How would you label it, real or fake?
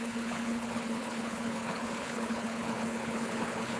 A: fake